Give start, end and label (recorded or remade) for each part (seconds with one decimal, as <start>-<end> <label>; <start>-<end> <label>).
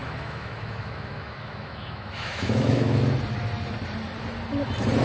0.0-3.0 remade; 3.0-5.0 recorded